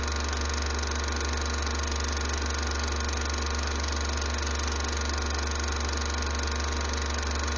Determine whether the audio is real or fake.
real